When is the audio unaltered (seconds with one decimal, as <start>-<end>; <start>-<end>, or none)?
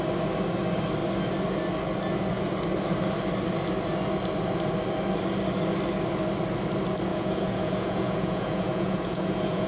0.0-7.1